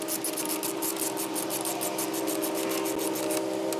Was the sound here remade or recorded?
recorded